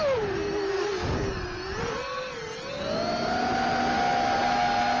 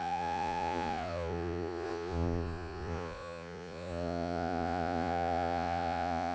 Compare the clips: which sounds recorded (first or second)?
first